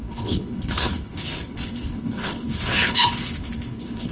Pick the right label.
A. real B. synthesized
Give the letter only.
B